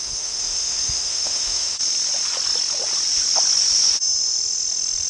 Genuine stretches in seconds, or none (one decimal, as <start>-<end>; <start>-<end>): 1.8-5.1